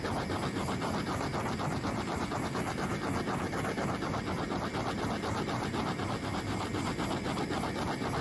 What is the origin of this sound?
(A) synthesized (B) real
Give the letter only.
B